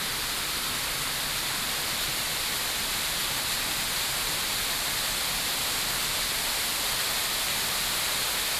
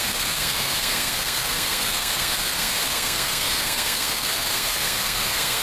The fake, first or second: second